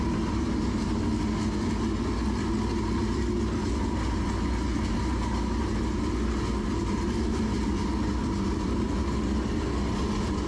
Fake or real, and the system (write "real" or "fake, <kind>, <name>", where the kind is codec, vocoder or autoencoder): real